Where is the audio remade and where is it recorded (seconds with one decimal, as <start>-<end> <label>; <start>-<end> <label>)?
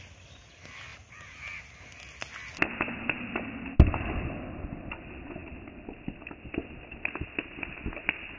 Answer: 0.0-8.4 recorded